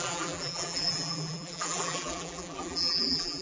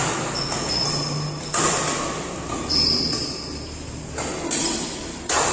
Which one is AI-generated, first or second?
first